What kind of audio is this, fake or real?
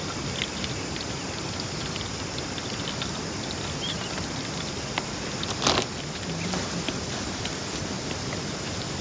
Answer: real